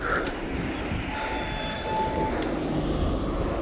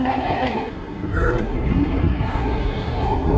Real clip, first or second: first